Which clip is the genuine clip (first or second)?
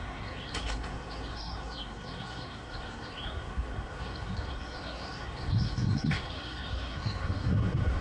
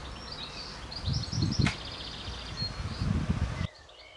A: second